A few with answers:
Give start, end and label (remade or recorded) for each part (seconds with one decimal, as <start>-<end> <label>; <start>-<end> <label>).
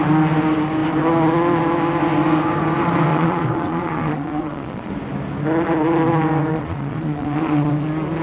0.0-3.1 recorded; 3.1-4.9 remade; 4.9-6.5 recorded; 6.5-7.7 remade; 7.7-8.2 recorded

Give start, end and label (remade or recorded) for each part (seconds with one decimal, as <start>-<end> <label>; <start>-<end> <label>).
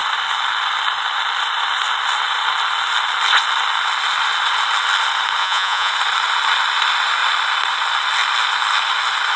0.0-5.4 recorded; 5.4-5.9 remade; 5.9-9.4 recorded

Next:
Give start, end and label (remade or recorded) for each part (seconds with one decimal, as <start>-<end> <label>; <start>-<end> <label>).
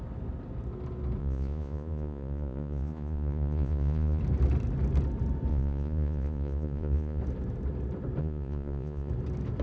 0.0-1.2 recorded; 1.2-4.2 remade; 4.2-5.5 recorded; 5.5-7.2 remade; 7.2-8.2 recorded; 8.2-9.1 remade; 9.1-9.6 recorded